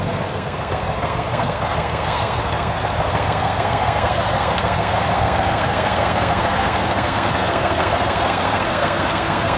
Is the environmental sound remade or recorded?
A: remade